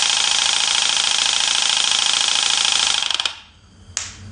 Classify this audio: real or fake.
real